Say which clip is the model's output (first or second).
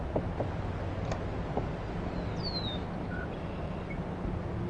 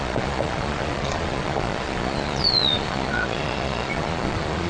second